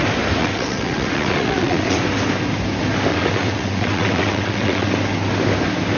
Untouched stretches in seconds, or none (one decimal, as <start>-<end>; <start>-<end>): 0.0-0.4; 2.0-3.1; 4.9-6.0